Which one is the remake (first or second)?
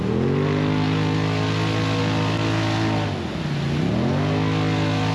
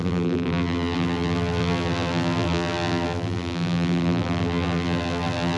second